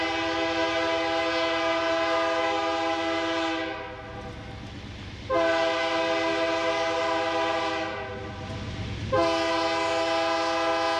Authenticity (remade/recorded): recorded